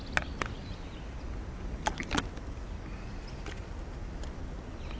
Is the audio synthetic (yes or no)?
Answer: no